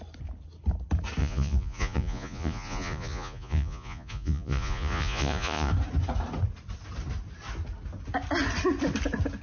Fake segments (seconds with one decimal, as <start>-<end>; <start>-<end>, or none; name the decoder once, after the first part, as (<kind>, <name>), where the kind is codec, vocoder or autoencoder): 1.2-5.7 (vocoder, Vocos)